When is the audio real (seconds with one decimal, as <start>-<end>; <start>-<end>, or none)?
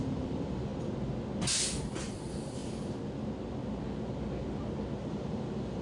0.7-1.9; 2.6-5.1